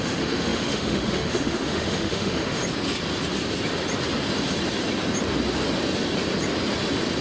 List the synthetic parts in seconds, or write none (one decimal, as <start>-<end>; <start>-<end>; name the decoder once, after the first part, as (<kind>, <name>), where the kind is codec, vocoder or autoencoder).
0.0-2.6 (autoencoder, DAC-VAE)